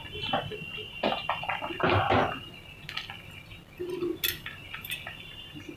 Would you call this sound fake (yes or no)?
no